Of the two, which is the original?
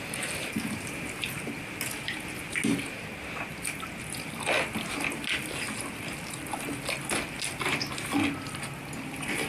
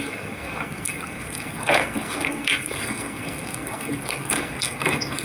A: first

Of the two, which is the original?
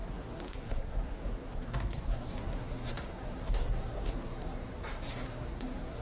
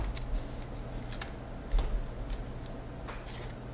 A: second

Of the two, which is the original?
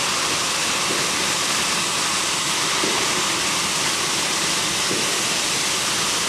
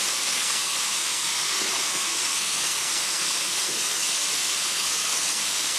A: first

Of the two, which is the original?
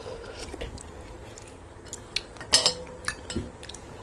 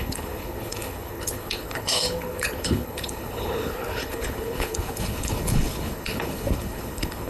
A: first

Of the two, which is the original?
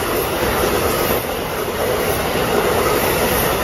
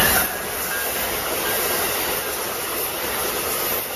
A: first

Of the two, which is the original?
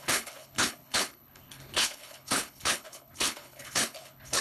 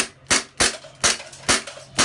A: second